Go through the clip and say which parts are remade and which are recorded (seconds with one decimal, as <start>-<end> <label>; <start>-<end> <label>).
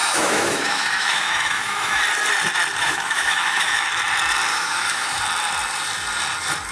0.0-2.0 remade; 2.0-2.8 recorded; 2.8-3.9 remade; 3.9-4.5 recorded; 4.5-5.2 remade; 5.2-6.7 recorded